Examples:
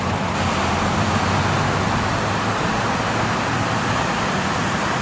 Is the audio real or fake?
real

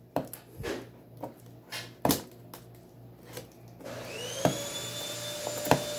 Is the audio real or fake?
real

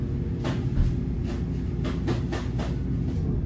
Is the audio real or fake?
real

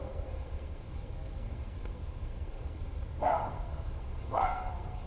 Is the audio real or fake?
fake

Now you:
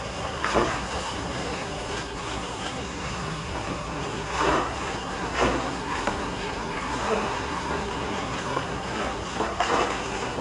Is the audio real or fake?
fake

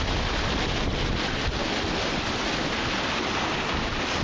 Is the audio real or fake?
real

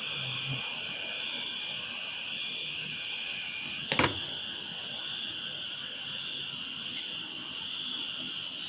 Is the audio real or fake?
real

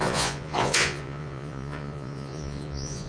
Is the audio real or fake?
fake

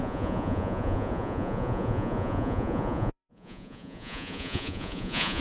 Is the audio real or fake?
fake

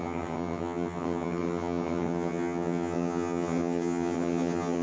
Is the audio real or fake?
fake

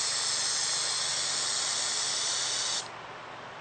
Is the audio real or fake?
real